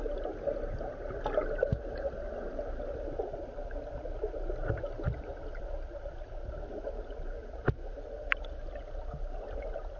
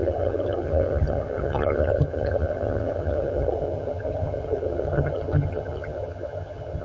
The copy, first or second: second